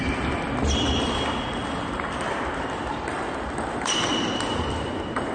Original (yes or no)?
yes